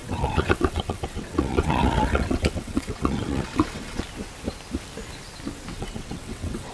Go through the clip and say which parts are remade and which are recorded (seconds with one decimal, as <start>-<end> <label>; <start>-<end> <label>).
0.0-4.0 remade; 4.0-5.7 recorded; 5.7-6.7 remade